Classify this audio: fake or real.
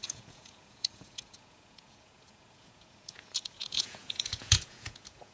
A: fake